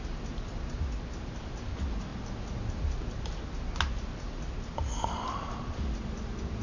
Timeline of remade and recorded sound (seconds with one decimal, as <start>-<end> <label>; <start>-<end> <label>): 0.0-6.6 recorded